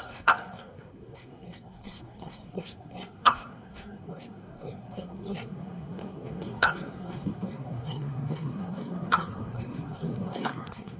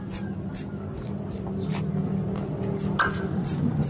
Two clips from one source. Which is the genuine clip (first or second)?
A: second